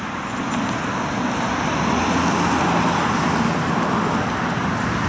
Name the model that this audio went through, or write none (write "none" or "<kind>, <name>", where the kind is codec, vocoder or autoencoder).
none